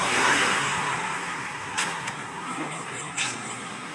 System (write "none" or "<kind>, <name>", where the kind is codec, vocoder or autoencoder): codec, SNAC